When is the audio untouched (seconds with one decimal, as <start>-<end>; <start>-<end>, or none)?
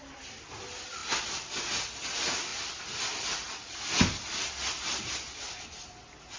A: 0.0-1.0; 1.6-6.4